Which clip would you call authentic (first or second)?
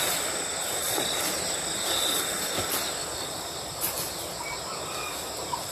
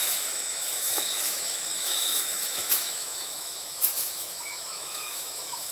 first